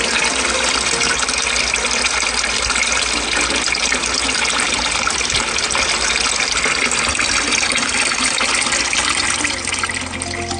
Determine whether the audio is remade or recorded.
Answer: recorded